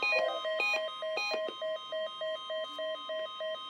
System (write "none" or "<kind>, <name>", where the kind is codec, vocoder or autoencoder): none